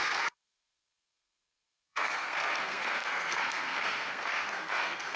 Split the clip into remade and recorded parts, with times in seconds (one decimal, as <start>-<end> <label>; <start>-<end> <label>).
0.0-5.2 remade